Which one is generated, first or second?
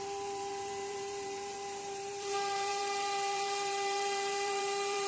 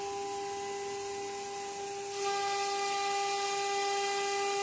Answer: first